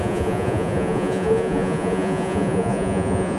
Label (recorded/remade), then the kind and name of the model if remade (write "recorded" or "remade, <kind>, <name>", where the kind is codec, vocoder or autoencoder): remade, vocoder, Vocos